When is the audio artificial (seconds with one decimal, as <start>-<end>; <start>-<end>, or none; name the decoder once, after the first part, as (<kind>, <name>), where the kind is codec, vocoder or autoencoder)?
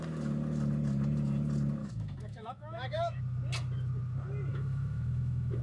1.8-3.2 (autoencoder, DAC-VAE); 4.5-5.6